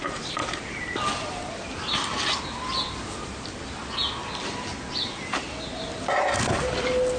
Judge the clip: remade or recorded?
recorded